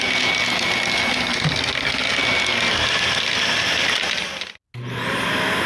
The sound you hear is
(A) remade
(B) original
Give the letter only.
B